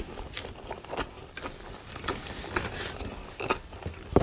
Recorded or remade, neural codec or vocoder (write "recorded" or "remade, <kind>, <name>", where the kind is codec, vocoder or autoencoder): recorded